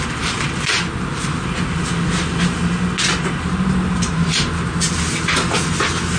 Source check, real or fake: real